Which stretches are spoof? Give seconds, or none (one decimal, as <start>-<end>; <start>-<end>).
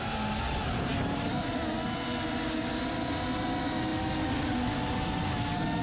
none